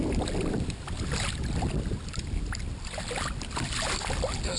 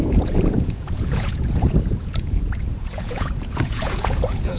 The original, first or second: first